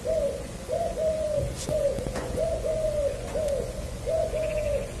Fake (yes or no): yes